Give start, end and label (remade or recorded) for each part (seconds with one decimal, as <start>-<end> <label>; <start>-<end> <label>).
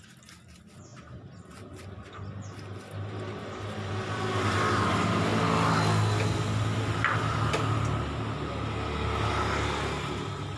0.0-10.6 recorded